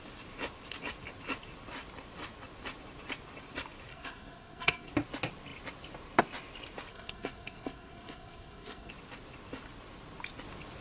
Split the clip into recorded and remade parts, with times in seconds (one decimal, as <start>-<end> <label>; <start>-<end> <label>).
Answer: 0.0-3.9 recorded; 3.9-4.9 remade; 4.9-6.9 recorded; 6.9-8.9 remade; 8.9-10.8 recorded

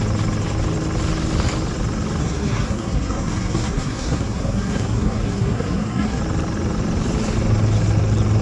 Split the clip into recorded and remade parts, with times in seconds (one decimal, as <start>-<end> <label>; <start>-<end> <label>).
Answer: 0.0-2.2 recorded; 2.2-6.2 remade; 6.2-8.4 recorded

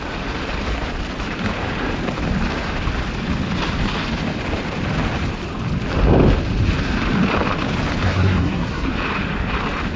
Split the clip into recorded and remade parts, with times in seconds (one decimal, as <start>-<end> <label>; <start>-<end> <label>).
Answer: 0.0-8.1 recorded; 8.1-8.9 remade; 8.9-10.0 recorded

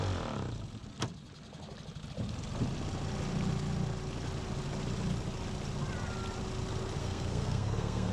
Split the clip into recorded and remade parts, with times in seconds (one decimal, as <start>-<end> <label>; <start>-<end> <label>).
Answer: 0.0-7.0 recorded; 7.0-8.1 remade

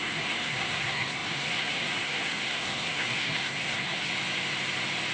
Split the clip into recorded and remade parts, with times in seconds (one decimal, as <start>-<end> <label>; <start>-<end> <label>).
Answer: 0.0-4.1 remade; 4.1-5.1 recorded

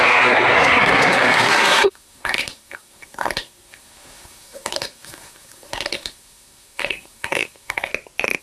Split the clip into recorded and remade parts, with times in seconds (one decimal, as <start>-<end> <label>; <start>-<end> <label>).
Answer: 0.0-7.9 remade; 7.9-8.4 recorded

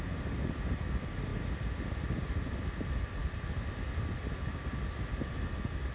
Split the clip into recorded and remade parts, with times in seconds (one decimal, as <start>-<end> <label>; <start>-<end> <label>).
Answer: 0.0-5.9 recorded

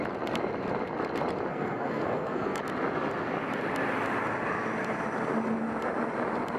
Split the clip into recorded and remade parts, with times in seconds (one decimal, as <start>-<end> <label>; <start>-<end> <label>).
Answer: 0.0-1.5 recorded; 1.5-2.6 remade; 2.6-6.6 recorded